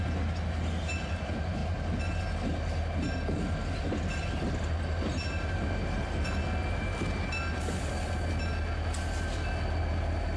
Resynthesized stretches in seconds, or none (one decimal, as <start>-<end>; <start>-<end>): none